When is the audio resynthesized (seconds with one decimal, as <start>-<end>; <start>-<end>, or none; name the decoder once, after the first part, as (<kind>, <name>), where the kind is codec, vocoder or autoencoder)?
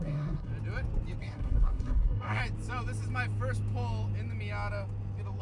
0.0-0.5 (codec, SNAC); 1.2-2.4